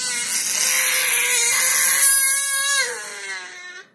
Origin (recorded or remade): recorded